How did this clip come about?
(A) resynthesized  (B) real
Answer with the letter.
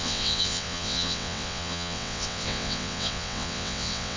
A